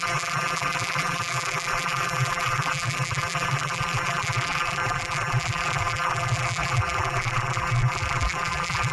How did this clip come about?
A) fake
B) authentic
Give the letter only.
A